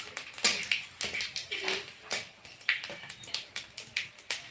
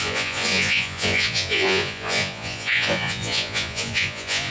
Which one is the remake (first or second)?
second